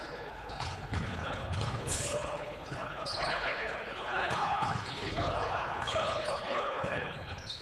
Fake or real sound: fake